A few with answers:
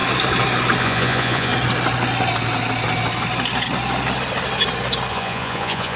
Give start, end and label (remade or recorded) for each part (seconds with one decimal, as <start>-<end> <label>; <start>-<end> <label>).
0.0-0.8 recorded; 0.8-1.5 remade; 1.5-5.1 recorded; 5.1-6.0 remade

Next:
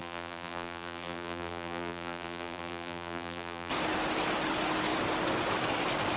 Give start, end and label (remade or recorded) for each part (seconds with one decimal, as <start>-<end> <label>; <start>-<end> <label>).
0.0-3.7 remade; 3.7-6.2 recorded

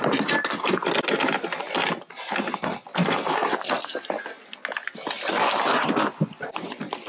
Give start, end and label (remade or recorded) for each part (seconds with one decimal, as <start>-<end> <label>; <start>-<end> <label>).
0.0-7.1 recorded